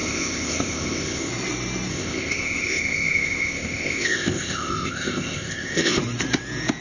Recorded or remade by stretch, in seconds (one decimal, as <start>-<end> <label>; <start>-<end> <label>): 0.0-1.3 remade; 1.3-1.9 recorded; 1.9-6.0 remade; 6.0-6.8 recorded